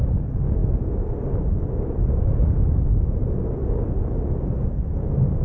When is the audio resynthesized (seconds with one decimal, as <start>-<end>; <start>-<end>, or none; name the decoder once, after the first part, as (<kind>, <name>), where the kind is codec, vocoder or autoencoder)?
3.2-3.8 (vocoder, BigVGAN v2)

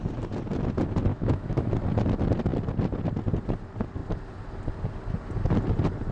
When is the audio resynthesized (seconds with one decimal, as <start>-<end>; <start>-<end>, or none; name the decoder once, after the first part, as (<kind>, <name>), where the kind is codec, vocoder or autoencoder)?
1.1-1.7 (autoencoder, DAC-VAE)

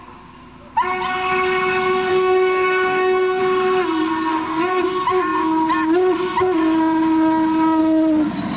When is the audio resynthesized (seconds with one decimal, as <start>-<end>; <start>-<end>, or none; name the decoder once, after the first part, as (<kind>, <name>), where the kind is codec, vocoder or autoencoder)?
2.1-3.4 (codec, DAC); 4.3-4.8

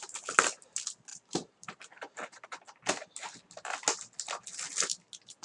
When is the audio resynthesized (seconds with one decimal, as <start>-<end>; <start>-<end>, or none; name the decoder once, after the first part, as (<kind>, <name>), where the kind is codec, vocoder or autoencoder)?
1.1-2.5 (vocoder, BigVGAN v2)

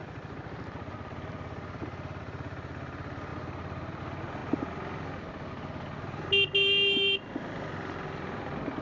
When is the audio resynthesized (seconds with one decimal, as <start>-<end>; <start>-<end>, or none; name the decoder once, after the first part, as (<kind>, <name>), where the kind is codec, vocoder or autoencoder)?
0.0-1.1 (vocoder, BigVGAN v2); 3.3-4.0

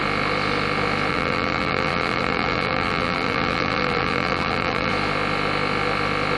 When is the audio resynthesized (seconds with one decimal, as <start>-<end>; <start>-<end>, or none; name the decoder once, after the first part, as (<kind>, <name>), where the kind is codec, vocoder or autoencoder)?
1.1-4.9 (vocoder, BigVGAN v2)

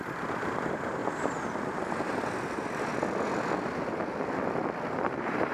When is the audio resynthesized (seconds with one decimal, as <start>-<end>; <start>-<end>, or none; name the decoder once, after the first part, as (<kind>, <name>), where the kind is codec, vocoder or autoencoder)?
0.0-1.0 (vocoder, BigVGAN v2); 2.2-2.9; 4.9-5.5